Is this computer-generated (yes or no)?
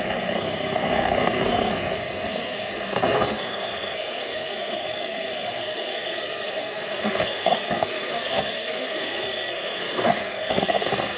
yes